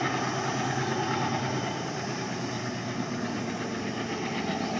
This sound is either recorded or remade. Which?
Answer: recorded